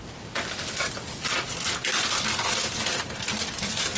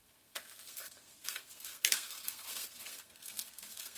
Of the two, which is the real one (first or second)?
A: first